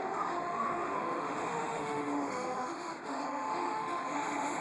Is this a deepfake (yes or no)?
yes